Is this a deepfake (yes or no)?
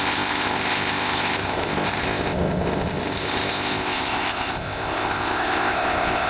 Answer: yes